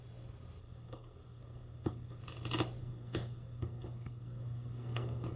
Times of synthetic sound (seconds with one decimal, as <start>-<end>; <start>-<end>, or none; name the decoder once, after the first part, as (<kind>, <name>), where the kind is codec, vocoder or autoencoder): 0.6-2.2 (codec, SNAC); 2.8-5.4